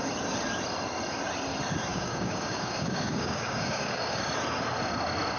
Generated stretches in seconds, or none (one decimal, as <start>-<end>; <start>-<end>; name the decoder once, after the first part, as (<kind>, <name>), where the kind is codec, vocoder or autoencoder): 1.9-4.2 (codec, DAC)